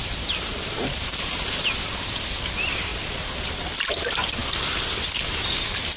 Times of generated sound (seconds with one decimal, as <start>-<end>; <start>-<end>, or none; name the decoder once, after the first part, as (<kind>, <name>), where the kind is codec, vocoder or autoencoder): 0.0-1.4 (vocoder, BigVGAN v2)